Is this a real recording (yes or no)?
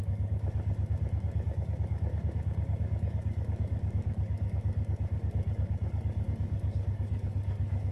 no